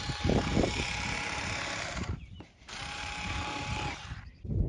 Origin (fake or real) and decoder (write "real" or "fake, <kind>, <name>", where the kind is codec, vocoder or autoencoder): fake, vocoder, BigVGAN v2